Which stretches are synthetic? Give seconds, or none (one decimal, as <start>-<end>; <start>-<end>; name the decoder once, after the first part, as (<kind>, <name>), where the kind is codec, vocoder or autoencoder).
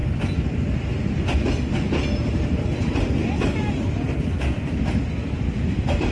none